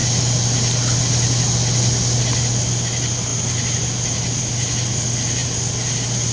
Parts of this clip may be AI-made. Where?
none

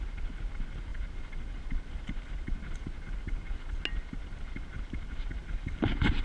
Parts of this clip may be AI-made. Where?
none

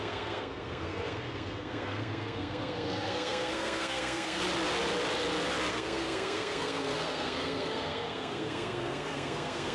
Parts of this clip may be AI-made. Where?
0.0-4.4 (codec, SNAC); 5.7-9.7

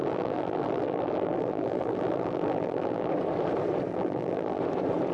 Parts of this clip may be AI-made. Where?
0.0-3.1 (vocoder, BigVGAN v2); 3.9-4.6

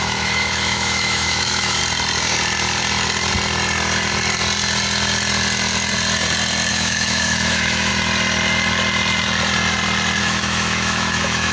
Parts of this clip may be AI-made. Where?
0.0-1.8 (autoencoder, DAC-VAE); 6.7-7.9; 10.2-11.5

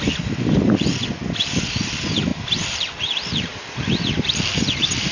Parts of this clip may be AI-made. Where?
none

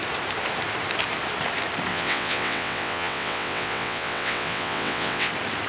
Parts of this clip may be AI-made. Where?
1.9-5.3 (vocoder, WaveNeXt)